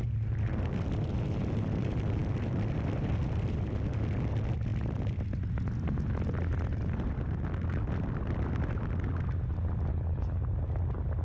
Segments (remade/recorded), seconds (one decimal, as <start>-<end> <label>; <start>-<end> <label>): 0.0-9.9 recorded; 9.9-10.4 remade; 10.4-11.2 recorded